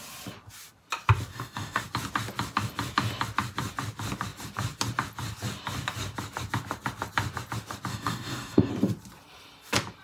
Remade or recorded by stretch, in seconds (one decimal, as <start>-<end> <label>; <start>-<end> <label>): 0.0-1.3 recorded; 1.3-1.8 remade; 1.8-7.9 recorded; 7.9-8.7 remade; 8.7-10.0 recorded